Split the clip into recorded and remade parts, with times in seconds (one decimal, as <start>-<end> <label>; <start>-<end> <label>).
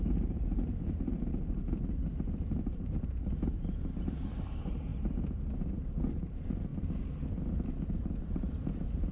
0.0-4.9 remade; 4.9-6.1 recorded; 6.1-6.7 remade; 6.7-8.2 recorded; 8.2-9.1 remade